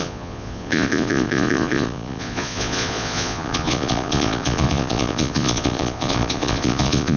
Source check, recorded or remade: remade